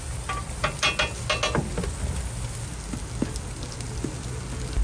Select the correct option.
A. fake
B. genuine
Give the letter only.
B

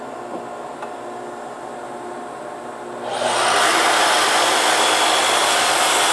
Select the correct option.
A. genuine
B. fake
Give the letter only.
A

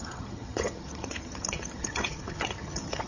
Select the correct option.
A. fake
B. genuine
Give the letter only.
A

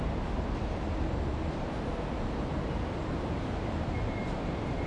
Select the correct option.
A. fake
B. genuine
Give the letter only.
B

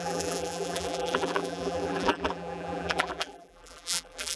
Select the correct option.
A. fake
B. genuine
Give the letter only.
A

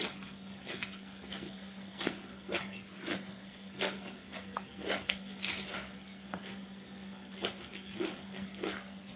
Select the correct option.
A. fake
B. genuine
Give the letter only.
A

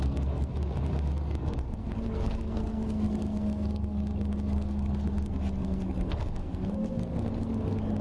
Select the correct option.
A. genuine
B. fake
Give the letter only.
B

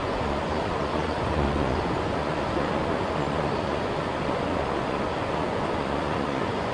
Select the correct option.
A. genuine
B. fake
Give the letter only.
B